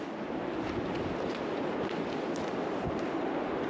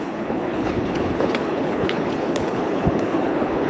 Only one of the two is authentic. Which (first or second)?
first